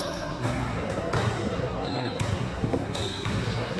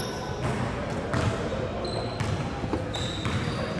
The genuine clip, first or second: second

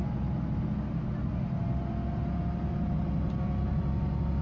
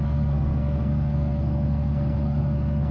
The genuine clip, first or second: first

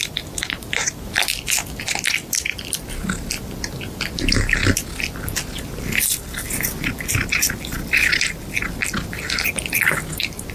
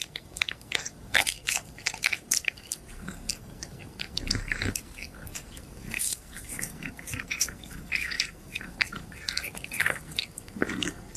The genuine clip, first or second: first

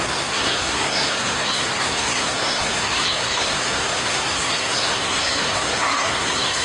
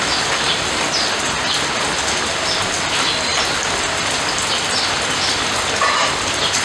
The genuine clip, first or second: second